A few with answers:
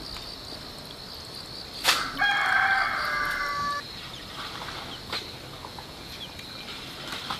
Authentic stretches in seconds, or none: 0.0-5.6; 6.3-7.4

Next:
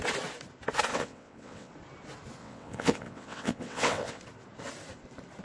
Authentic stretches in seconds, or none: 0.0-0.9; 1.7-2.4; 4.2-5.4

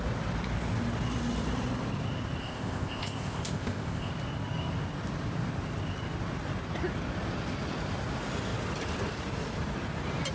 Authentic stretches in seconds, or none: 0.0-2.4; 4.1-10.3

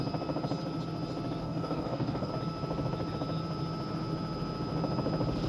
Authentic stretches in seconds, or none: 0.0-1.4; 2.3-5.5

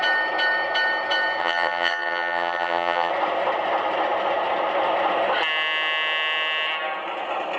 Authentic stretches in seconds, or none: 0.0-1.4; 3.1-7.6

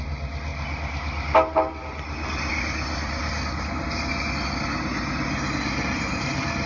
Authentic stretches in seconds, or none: 0.0-6.7

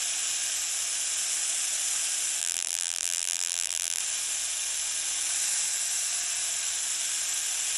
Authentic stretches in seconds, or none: 0.0-2.4; 4.0-7.8

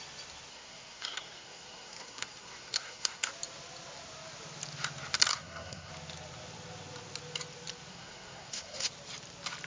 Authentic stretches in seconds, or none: 0.0-0.5; 3.3-5.3; 5.9-7.9; 8.9-9.7